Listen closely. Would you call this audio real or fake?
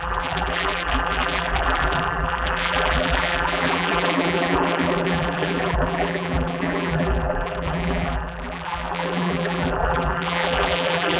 fake